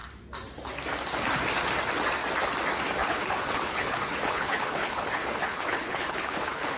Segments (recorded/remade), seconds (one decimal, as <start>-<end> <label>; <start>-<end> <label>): 0.0-3.0 recorded; 3.0-6.8 remade